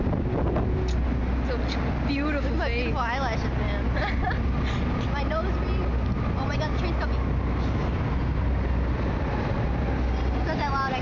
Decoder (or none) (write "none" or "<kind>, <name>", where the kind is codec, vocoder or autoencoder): none